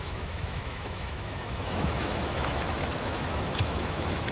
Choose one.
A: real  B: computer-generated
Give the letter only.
B